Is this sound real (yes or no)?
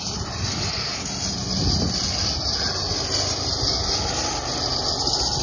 yes